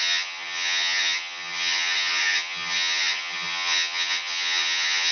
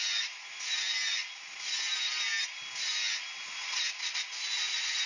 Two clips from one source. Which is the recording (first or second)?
second